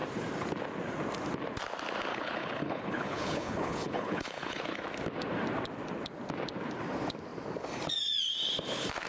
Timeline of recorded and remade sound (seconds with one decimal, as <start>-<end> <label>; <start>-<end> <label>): 0.0-2.1 recorded; 2.1-4.8 remade; 4.8-9.1 recorded